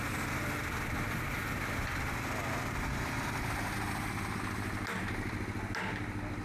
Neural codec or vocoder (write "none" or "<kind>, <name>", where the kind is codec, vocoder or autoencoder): none